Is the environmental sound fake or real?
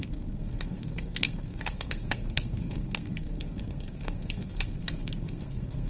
fake